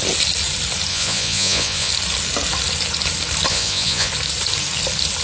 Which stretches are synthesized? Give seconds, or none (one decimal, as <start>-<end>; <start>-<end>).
0.9-1.9; 3.5-4.1